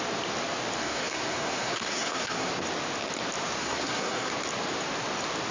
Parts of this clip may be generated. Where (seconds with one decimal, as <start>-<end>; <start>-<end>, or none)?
0.8-2.5; 3.6-4.3